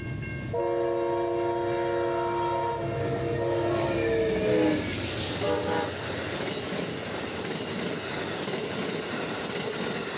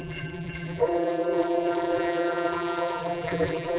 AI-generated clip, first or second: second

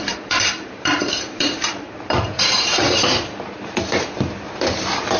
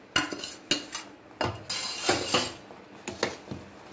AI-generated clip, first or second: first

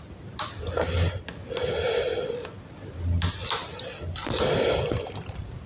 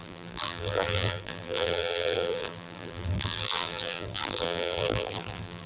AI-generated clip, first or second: second